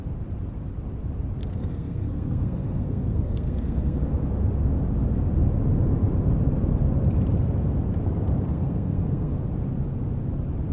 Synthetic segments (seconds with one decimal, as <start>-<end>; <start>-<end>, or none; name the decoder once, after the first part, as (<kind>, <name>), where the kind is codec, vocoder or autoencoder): 1.4-4.0 (codec, SNAC); 8.5-9.4

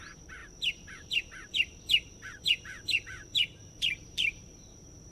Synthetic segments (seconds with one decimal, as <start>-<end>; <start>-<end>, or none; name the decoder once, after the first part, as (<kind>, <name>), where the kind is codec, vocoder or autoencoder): 0.0-5.1 (vocoder, BigVGAN v2)

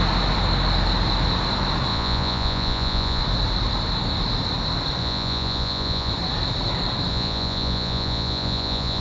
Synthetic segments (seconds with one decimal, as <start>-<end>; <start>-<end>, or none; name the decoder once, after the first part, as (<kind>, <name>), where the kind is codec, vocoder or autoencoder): 1.9-3.2 (vocoder, Vocos); 5.0-6.1; 7.1-9.0

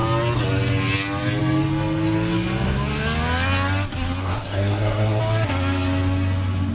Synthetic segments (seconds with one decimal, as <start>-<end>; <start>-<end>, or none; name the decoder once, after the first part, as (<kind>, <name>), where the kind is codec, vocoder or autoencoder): 4.2-5.2 (codec, SNAC)

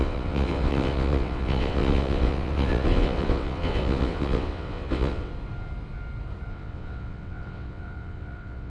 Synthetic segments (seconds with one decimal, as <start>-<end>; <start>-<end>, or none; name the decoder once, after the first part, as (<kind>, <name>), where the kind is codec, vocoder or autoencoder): 0.0-5.3 (vocoder, WaveNeXt); 6.5-8.7